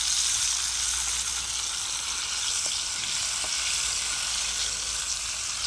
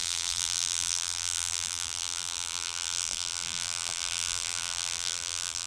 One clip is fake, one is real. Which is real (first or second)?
first